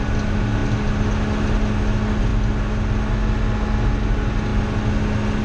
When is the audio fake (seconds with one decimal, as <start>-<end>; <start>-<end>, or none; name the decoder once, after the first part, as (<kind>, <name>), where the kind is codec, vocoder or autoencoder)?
none